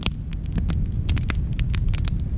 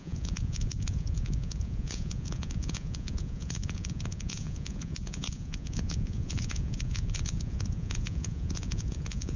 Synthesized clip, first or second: second